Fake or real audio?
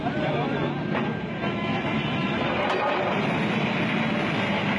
real